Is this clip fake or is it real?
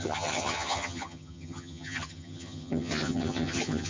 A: fake